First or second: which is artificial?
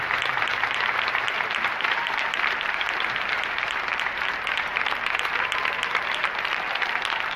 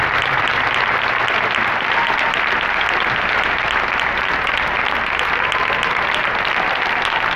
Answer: first